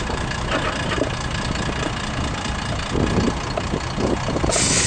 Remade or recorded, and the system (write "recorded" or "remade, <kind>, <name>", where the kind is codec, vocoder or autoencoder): recorded